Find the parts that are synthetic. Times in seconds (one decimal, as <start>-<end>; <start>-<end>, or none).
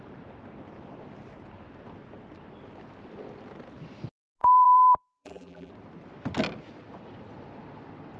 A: 4.4-5.7